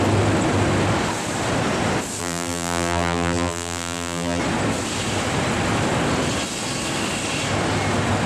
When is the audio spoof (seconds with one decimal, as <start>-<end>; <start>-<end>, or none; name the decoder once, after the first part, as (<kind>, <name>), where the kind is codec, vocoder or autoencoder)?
2.2-4.4 (vocoder, BigVGAN v2)